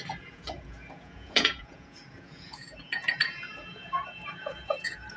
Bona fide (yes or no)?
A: no